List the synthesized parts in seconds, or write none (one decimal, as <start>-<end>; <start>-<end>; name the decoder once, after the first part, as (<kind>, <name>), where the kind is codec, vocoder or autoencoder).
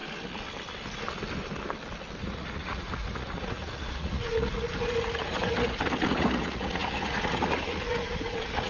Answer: 2.2-8.7 (vocoder, Vocos)